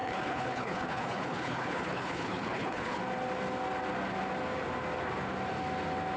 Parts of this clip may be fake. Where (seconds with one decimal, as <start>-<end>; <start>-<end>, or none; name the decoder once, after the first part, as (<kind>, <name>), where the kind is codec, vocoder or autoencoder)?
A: 0.0-3.0 (codec, HILCodec)